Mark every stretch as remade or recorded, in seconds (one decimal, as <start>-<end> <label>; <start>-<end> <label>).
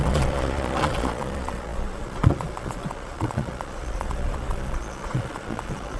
0.0-6.0 remade